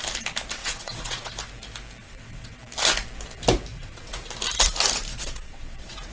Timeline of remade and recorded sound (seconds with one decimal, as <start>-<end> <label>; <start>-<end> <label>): 0.0-0.6 recorded; 0.6-1.3 remade; 1.3-2.0 recorded; 2.0-2.6 remade; 2.6-3.7 recorded; 3.7-4.3 remade; 4.3-5.1 recorded; 5.1-6.1 remade